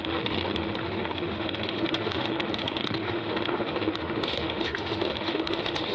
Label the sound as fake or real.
fake